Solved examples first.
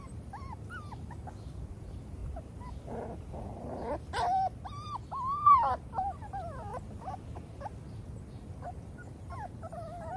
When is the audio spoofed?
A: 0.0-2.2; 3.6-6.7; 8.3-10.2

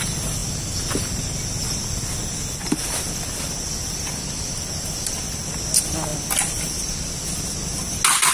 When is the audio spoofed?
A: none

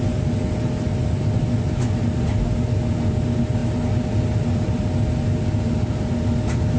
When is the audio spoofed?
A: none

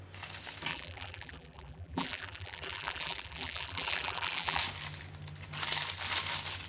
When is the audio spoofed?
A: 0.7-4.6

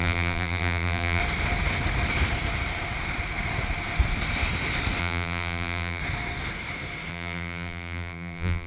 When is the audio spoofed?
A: 0.0-1.2; 5.0-6.0; 7.1-8.7

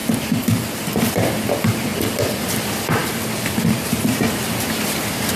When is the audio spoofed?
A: 1.1-5.4

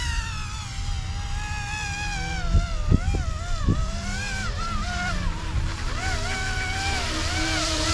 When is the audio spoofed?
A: 0.0-0.4; 3.6-7.9